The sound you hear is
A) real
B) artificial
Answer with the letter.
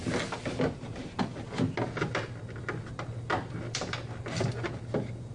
A